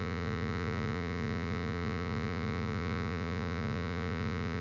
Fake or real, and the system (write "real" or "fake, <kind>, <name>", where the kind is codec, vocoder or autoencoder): fake, vocoder, Vocos